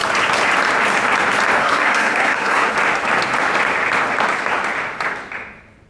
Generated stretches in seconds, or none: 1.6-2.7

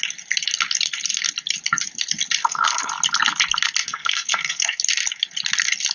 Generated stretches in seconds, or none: 2.4-2.9; 3.8-4.8

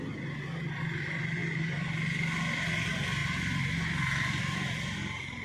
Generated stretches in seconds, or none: none

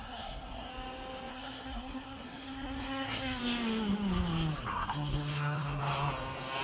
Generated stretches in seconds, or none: 0.0-0.7; 1.3-3.4; 4.7-5.8

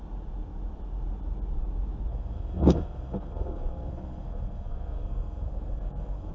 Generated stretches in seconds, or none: 2.1-6.3

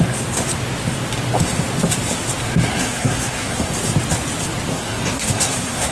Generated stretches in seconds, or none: 2.8-3.7; 4.7-5.9

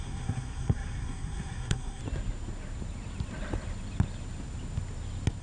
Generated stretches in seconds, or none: 0.0-2.0

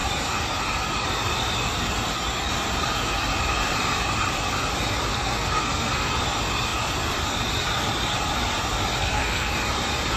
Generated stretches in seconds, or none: 5.1-6.1; 9.0-9.5